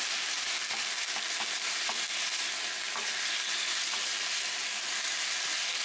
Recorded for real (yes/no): yes